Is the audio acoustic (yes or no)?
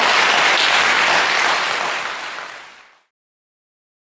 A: yes